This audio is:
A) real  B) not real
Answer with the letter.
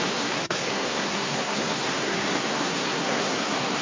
B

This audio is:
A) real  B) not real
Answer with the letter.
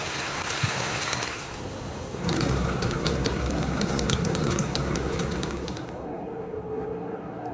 B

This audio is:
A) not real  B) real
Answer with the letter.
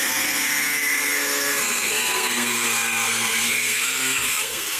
A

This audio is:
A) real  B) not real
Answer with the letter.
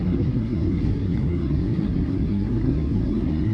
B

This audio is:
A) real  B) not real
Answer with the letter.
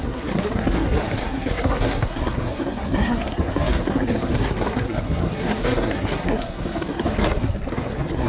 B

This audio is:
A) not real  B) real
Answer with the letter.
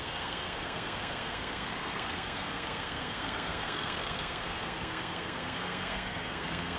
A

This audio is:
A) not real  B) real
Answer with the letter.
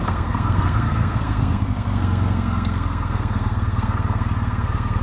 A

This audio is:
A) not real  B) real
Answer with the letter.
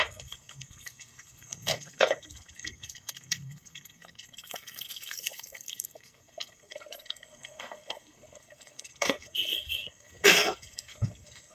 A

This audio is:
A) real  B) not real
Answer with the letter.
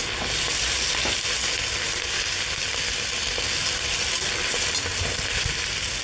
A